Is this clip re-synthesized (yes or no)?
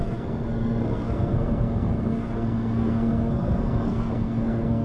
yes